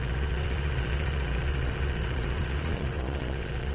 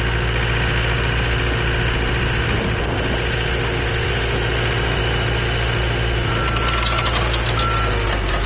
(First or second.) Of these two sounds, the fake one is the first